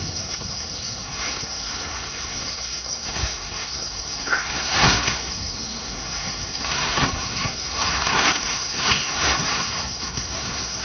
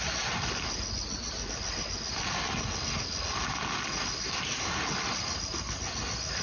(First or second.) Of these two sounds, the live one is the second